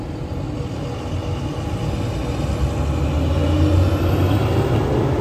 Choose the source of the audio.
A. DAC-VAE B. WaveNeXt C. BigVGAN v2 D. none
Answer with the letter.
D